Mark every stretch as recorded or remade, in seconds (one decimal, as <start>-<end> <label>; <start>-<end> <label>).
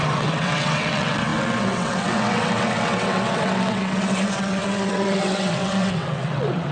0.0-6.7 remade